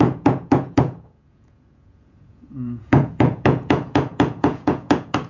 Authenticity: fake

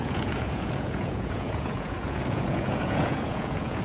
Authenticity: fake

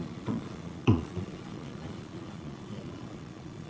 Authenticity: fake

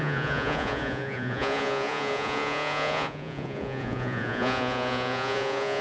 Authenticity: fake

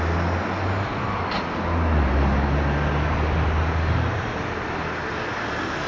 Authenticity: real